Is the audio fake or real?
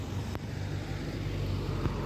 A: real